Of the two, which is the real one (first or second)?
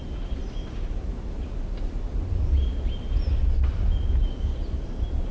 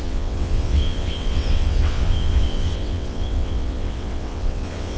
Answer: first